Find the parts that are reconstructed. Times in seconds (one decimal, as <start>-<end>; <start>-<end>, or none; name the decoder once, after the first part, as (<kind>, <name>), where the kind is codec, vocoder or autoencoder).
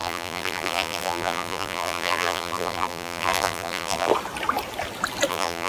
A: 0.0-4.1 (vocoder, BigVGAN v2); 5.3-5.7